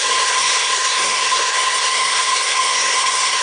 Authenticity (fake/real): fake